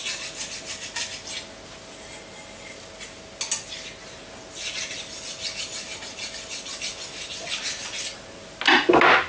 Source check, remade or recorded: recorded